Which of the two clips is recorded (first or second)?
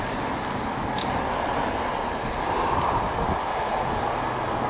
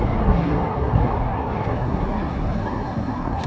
first